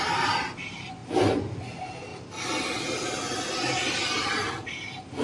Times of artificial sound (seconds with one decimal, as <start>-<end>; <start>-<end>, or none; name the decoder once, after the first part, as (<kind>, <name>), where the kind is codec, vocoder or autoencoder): none